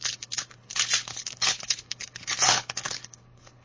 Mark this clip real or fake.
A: fake